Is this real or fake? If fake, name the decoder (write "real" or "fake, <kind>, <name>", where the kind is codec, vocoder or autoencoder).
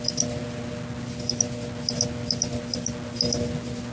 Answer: real